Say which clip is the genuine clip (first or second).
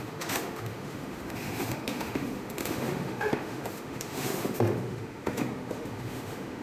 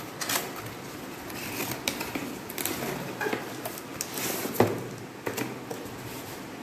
second